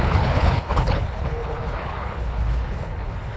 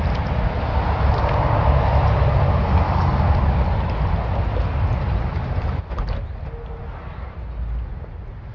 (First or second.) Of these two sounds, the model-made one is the first